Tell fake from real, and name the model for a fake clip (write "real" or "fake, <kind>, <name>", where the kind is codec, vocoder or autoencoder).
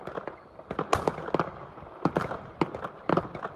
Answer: real